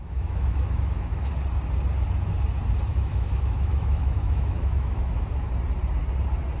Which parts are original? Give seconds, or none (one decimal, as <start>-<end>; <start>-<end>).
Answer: 1.3-2.9; 5.5-6.6